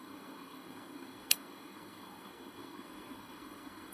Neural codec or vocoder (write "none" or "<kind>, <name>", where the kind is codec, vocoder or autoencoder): codec, SNAC